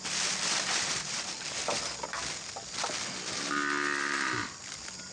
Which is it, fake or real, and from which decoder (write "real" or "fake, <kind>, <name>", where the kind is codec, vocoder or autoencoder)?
real